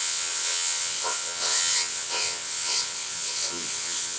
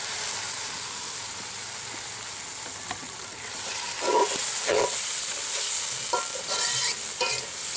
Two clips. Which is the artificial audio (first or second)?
first